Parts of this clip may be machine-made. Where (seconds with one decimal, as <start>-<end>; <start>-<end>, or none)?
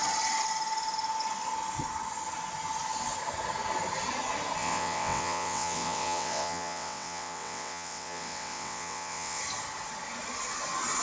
4.6-9.4